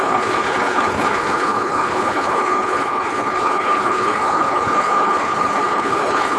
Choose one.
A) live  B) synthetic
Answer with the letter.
B